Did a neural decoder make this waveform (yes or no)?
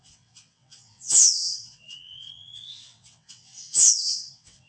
yes